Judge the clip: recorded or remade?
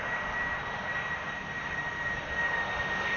recorded